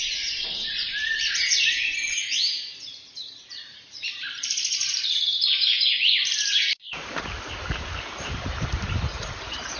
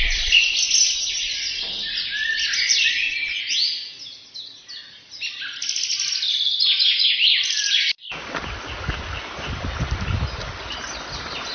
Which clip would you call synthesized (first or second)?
first